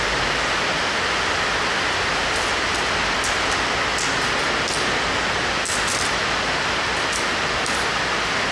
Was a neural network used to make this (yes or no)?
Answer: no